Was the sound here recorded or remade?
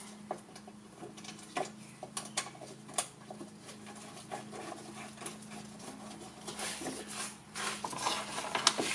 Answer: recorded